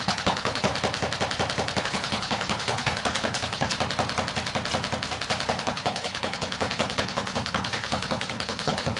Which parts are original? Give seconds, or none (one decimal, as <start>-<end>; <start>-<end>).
0.7-1.8; 3.7-5.6